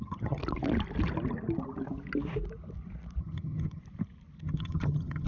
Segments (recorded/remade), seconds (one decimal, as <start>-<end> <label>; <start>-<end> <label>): 0.0-0.4 remade; 0.4-3.2 recorded; 3.2-3.8 remade; 3.8-4.4 recorded; 4.4-5.3 remade